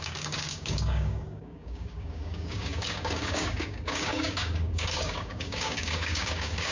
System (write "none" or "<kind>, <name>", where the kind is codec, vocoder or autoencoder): codec, DAC